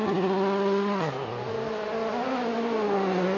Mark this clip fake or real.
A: real